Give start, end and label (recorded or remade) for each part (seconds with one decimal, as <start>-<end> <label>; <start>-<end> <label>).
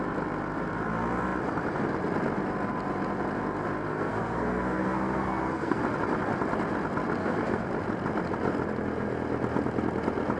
0.0-3.9 recorded; 3.9-5.8 remade; 5.8-7.2 recorded; 7.2-7.7 remade; 7.7-10.4 recorded